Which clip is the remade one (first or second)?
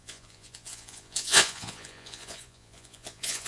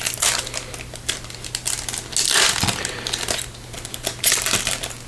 first